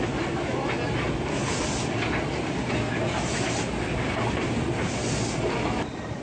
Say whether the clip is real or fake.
real